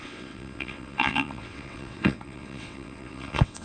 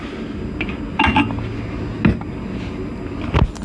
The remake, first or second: first